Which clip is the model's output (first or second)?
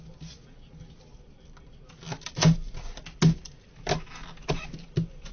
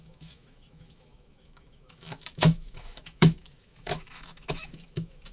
second